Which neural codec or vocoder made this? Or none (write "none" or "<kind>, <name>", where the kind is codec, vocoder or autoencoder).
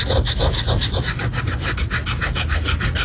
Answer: none